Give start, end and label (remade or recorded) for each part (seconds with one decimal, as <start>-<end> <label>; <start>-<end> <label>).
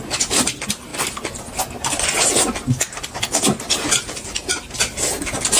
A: 0.0-5.6 recorded